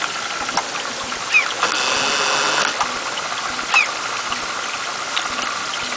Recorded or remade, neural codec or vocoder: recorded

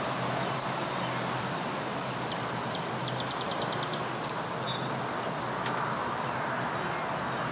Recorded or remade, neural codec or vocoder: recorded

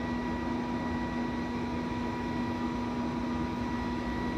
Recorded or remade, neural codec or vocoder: recorded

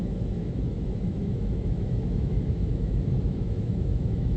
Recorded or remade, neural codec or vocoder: remade, autoencoder, DAC-VAE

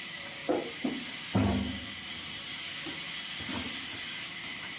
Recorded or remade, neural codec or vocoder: recorded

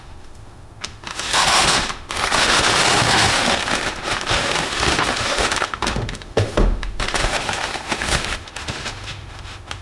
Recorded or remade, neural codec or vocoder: remade, autoencoder, DAC-VAE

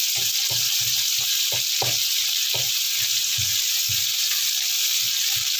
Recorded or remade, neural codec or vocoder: recorded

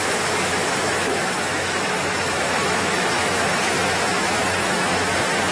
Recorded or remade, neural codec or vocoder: remade, autoencoder, DAC-VAE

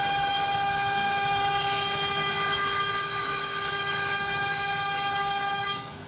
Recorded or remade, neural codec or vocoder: remade, autoencoder, DAC-VAE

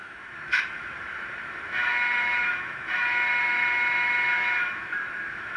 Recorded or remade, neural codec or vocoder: remade, autoencoder, DAC-VAE